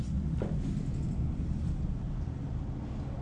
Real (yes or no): yes